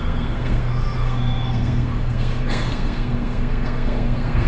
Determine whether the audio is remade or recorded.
remade